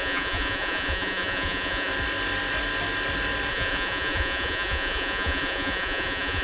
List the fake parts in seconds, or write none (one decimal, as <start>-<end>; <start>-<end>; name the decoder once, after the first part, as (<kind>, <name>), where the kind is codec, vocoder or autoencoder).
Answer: 0.0-1.9 (vocoder, Vocos); 3.5-6.4

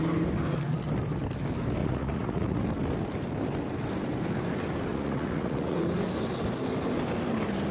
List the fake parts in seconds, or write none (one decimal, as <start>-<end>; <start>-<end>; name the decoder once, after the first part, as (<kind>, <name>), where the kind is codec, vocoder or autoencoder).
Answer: 1.8-2.6 (vocoder, Vocos); 4.9-5.8

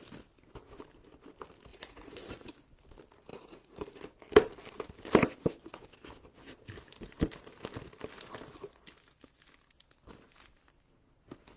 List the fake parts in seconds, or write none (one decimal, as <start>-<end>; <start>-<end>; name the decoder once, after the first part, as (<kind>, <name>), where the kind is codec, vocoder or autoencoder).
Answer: 1.7-2.5 (vocoder, Vocos); 3.3-3.9

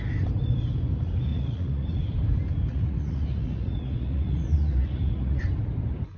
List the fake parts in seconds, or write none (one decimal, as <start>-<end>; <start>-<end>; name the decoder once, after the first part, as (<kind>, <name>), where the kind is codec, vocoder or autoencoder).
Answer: 1.3-2.0 (vocoder, Vocos); 2.7-5.4

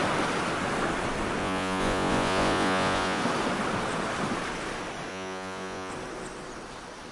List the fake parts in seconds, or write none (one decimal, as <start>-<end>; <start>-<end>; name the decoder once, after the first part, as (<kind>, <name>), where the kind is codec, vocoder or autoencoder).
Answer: 1.4-3.2 (vocoder, Vocos); 5.1-5.9

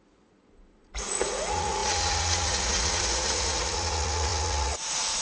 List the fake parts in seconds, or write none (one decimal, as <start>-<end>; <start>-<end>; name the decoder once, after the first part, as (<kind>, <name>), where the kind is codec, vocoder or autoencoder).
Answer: 0.0-5.2 (vocoder, Vocos)

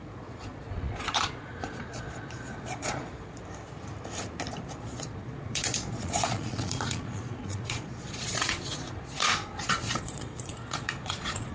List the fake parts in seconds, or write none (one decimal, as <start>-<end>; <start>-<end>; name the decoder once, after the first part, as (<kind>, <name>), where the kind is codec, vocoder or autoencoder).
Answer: 0.0-3.4 (vocoder, Vocos); 4.8-11.5